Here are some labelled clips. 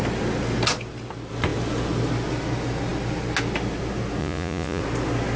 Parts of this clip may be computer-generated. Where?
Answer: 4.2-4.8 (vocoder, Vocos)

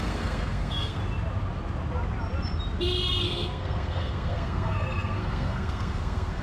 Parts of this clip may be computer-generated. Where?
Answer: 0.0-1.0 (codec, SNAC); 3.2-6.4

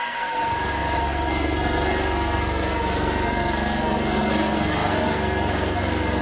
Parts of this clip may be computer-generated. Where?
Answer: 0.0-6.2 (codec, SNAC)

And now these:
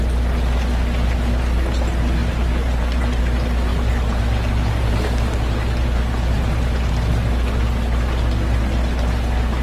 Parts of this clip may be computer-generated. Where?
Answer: 2.2-3.2 (vocoder, BigVGAN v2); 3.7-7.1